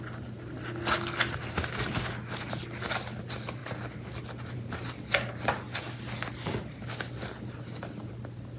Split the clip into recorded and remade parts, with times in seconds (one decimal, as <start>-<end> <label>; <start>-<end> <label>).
0.0-8.6 recorded